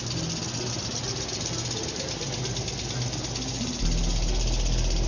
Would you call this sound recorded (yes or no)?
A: yes